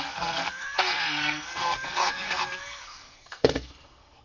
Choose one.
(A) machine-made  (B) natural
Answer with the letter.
A